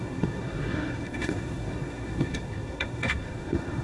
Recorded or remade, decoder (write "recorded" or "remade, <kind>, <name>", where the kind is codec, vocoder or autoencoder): remade, codec, SNAC